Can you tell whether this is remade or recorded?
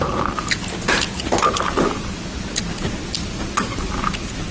recorded